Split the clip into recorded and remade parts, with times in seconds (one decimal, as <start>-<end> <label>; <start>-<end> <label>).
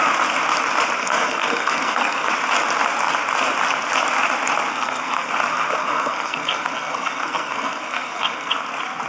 0.0-1.0 recorded; 1.0-2.3 remade; 2.3-4.7 recorded; 4.7-5.3 remade; 5.3-5.8 recorded; 5.8-8.5 remade; 8.5-9.1 recorded